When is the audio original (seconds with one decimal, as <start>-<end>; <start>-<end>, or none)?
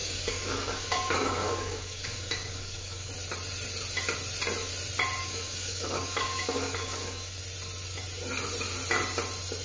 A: 3.1-5.2; 7.4-9.6